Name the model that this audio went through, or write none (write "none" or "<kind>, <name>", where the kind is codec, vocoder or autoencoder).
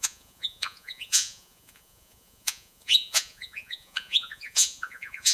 vocoder, Vocos